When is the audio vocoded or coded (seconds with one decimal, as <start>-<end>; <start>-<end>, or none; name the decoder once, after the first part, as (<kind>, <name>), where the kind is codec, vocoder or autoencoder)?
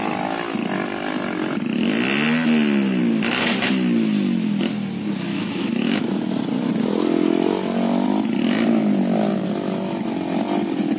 5.3-6.3 (autoencoder, DAC-VAE)